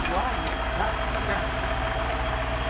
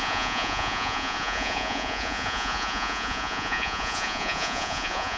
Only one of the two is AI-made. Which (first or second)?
second